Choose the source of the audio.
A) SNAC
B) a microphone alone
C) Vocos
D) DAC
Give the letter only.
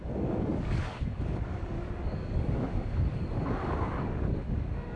D